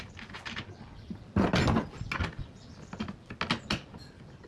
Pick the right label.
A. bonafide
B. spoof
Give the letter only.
A